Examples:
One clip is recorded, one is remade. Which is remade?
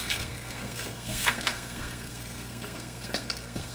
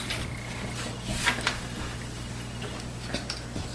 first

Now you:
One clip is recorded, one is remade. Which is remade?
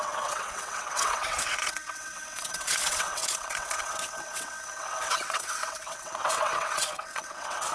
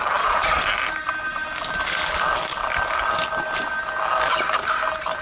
first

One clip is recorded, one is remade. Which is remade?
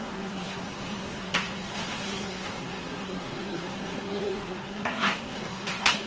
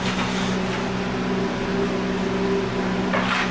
first